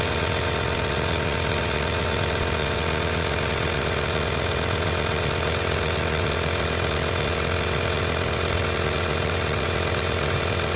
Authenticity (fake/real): fake